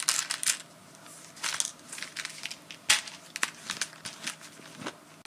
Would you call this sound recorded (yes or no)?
yes